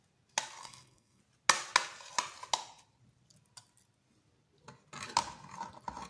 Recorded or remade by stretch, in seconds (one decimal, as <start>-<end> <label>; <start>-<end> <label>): 0.0-0.6 recorded; 0.6-1.2 remade; 1.2-6.1 recorded